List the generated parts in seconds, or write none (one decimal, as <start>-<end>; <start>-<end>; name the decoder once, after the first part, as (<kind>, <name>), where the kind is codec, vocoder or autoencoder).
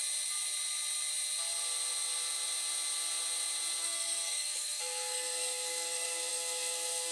3.8-7.1 (codec, SNAC)